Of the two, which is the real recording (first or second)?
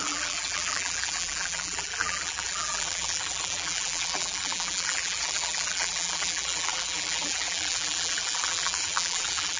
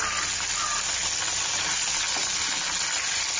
second